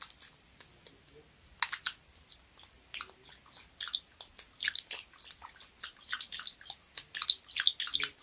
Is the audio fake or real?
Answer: real